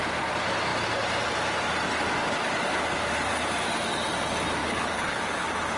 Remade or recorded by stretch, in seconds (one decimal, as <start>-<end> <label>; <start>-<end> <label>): 0.0-4.6 recorded; 4.6-5.2 remade; 5.2-5.8 recorded